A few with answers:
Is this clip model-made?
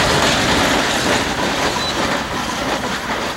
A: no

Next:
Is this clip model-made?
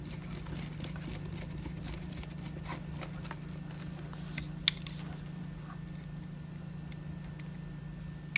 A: no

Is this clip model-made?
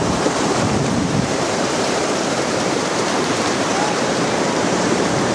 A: yes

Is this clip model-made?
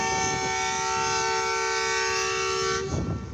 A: no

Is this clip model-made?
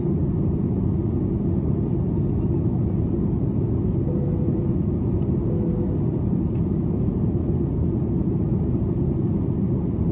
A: no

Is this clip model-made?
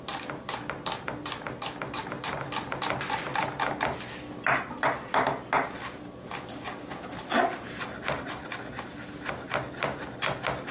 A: no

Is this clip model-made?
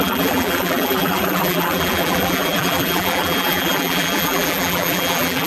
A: yes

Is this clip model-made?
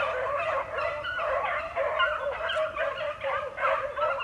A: yes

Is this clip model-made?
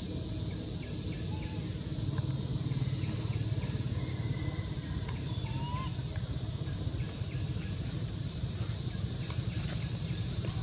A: yes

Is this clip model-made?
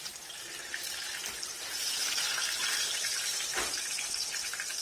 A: yes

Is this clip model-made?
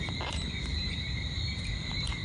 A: yes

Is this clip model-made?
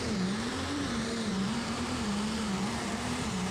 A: yes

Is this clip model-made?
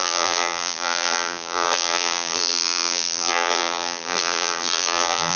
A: yes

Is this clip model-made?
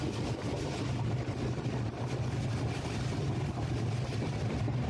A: no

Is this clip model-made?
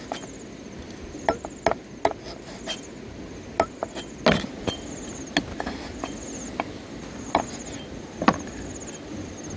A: no